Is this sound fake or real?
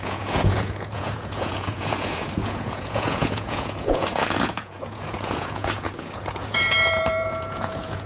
fake